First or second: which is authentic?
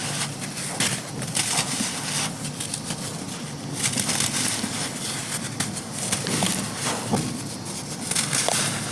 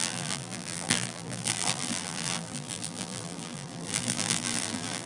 first